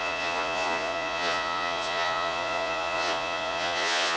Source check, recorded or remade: remade